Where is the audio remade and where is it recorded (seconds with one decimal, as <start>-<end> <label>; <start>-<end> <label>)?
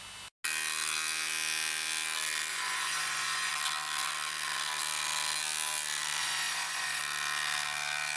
0.0-2.5 recorded; 2.5-3.5 remade; 3.5-6.2 recorded; 6.2-7.0 remade; 7.0-8.2 recorded